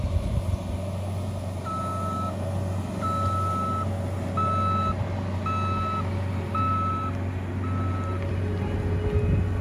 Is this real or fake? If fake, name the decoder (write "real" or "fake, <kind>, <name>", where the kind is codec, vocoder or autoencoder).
real